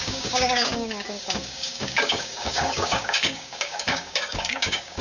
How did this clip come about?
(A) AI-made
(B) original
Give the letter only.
A